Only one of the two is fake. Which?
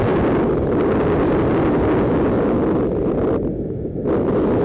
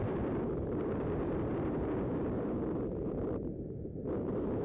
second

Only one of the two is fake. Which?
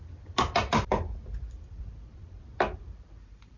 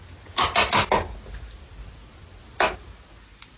first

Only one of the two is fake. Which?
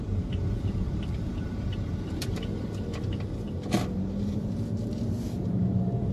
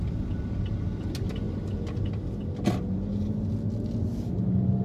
first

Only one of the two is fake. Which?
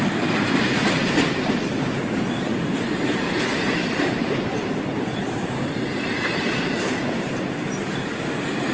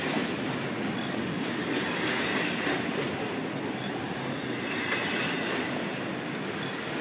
first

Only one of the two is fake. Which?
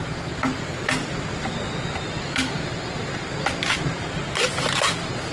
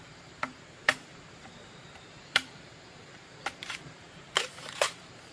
second